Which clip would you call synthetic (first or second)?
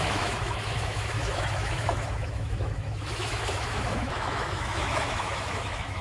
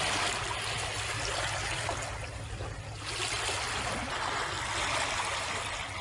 first